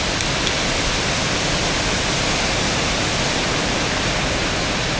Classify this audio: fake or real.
real